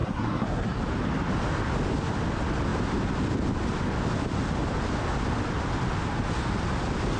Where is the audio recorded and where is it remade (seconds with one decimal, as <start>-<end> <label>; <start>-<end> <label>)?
0.0-0.8 remade; 0.8-7.2 recorded